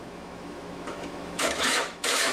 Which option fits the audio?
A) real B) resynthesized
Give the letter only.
B